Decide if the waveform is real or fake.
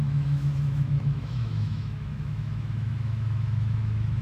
fake